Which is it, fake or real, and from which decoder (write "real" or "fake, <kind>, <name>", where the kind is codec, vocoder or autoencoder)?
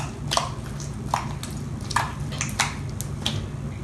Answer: real